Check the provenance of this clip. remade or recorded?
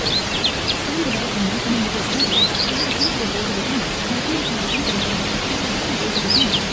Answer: remade